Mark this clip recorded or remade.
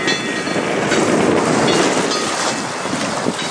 recorded